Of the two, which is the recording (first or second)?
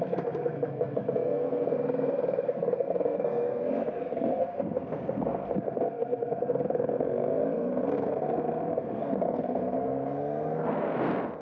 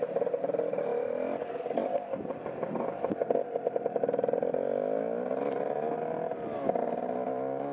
second